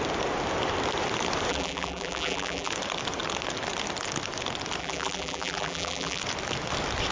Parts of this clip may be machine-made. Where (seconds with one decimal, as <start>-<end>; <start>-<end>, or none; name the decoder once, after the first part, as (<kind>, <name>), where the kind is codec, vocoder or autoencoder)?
1.5-2.7 (vocoder, BigVGAN v2); 4.8-6.2